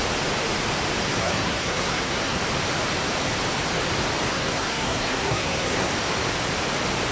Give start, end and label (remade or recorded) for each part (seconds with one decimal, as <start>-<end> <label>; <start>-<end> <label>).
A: 0.0-1.2 recorded; 1.2-2.4 remade; 2.4-4.3 recorded; 4.3-5.9 remade; 5.9-7.1 recorded